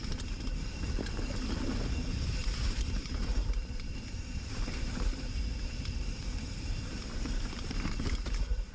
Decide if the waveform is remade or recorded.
remade